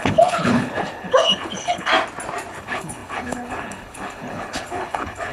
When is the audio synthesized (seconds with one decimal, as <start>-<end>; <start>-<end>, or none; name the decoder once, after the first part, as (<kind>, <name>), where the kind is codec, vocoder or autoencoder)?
0.0-1.9 (codec, HILCodec); 2.5-5.3